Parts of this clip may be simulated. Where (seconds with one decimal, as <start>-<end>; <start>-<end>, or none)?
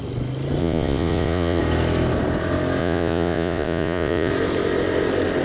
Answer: 0.6-1.6; 2.8-4.3